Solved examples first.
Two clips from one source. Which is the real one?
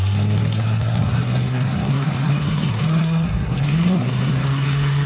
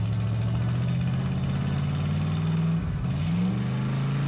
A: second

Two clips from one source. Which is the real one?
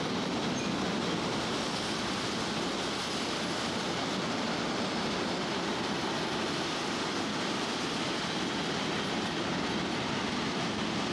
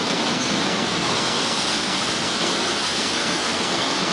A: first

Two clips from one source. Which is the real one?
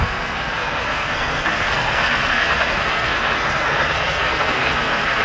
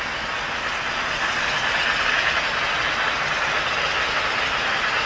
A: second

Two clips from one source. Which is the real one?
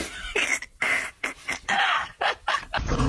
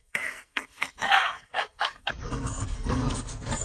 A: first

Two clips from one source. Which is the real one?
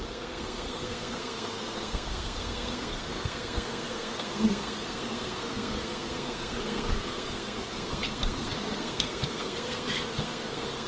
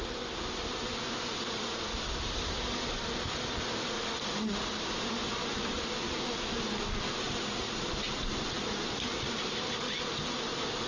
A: second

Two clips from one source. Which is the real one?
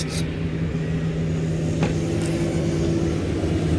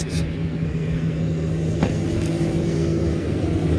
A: first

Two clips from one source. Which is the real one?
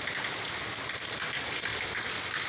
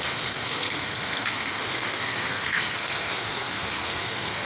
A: first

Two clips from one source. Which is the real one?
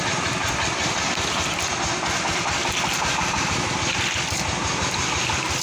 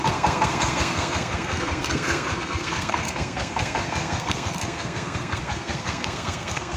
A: first